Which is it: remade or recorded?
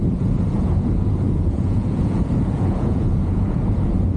remade